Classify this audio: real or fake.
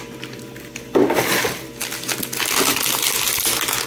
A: real